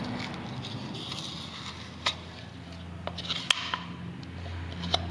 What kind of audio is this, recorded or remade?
recorded